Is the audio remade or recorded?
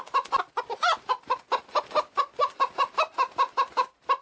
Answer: recorded